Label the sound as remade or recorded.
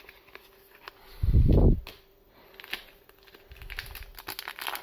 recorded